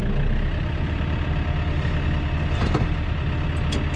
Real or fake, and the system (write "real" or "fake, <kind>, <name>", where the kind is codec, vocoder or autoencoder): real